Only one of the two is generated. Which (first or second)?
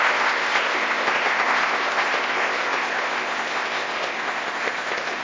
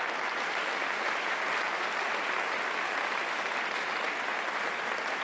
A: first